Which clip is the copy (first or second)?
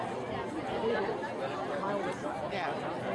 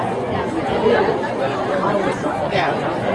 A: second